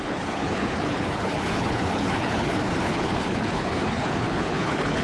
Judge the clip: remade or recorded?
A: remade